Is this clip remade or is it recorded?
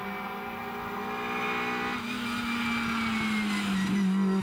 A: recorded